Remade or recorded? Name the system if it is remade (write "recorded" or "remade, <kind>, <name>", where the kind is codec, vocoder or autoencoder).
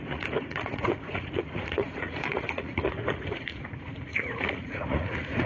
remade, vocoder, Vocos